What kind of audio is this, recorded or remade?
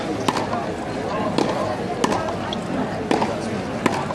recorded